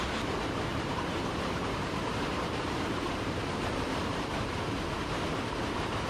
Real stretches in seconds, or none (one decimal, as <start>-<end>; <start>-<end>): 0.0-0.7; 4.4-6.1